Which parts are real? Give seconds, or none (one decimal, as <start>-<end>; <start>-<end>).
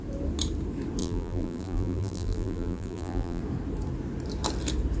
0.0-1.0; 3.4-5.0